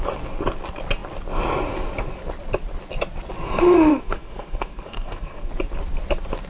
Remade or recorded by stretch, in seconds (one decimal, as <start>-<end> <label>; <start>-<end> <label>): 0.0-3.9 recorded; 3.9-5.5 remade; 5.5-6.5 recorded